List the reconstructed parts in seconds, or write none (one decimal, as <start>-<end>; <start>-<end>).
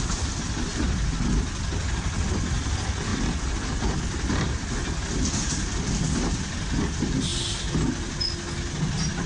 0.0-0.7; 1.2-7.3; 8.8-9.3